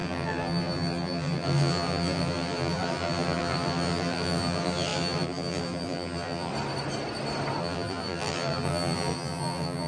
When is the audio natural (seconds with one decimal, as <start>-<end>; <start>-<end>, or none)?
6.5-7.6